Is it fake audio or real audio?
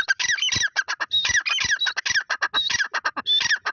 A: real